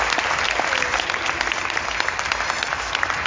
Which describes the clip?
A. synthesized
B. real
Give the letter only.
B